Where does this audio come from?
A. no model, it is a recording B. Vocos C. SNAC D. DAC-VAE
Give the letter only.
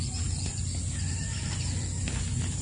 A